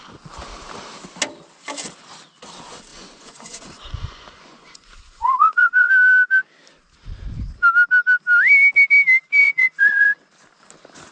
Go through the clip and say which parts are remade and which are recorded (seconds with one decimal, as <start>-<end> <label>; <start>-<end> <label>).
0.0-2.9 recorded; 2.9-5.9 remade; 5.9-9.4 recorded; 9.4-10.2 remade; 10.2-11.1 recorded